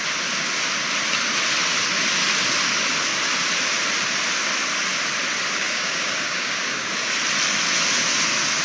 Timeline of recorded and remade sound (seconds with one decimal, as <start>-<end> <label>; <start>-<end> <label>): 0.0-5.6 recorded; 5.6-7.1 remade; 7.1-8.6 recorded